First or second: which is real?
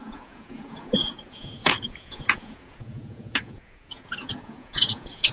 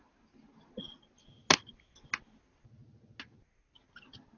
second